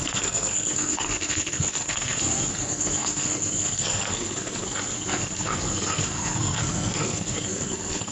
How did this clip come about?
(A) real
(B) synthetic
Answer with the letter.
B